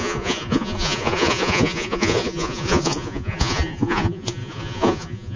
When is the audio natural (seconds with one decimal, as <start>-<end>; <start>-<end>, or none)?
none